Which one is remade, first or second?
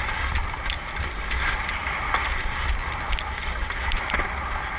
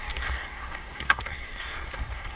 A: second